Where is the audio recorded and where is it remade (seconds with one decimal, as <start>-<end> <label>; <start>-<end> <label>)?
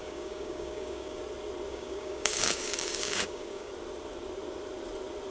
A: 0.0-1.2 remade; 1.2-1.7 recorded; 1.7-3.7 remade; 3.7-5.3 recorded